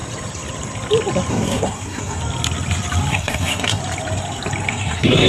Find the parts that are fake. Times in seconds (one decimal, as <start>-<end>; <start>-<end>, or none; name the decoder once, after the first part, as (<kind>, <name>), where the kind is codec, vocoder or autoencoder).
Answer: 1.3-2.2 (codec, SNAC); 3.1-3.8; 4.7-5.3